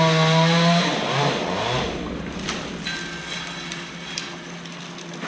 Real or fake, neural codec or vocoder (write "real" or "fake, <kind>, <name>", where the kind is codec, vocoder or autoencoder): real